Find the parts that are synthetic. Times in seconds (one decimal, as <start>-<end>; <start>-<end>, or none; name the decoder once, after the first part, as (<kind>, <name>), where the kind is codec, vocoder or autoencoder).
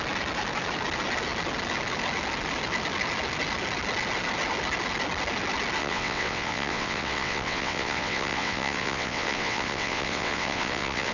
5.8-11.1 (vocoder, WaveNeXt)